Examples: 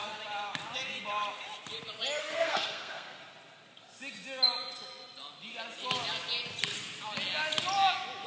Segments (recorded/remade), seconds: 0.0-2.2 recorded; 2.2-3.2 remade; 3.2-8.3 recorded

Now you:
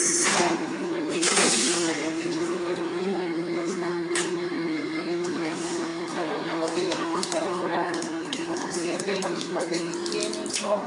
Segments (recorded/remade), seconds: 0.0-9.9 remade; 9.9-10.5 recorded; 10.5-10.9 remade

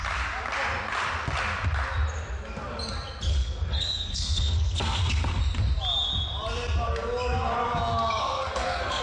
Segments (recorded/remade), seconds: 0.0-3.3 recorded; 3.3-5.4 remade; 5.4-8.2 recorded; 8.2-9.0 remade